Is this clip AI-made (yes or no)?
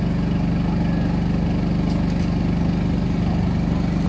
no